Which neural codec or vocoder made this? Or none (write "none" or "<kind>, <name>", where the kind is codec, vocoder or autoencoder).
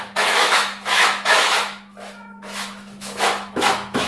autoencoder, DAC-VAE